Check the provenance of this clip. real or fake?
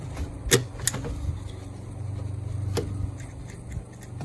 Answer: real